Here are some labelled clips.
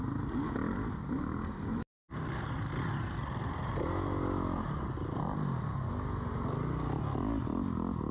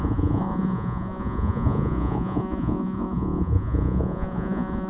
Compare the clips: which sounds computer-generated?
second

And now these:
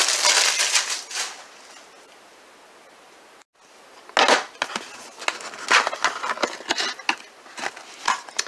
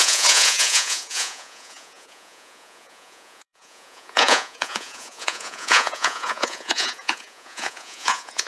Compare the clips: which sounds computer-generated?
second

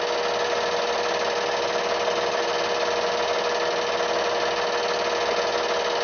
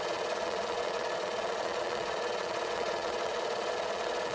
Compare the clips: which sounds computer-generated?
second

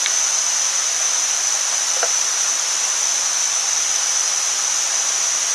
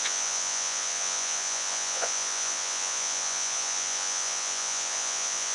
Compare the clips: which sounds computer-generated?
second